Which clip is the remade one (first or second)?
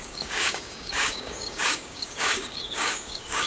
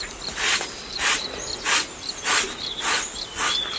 first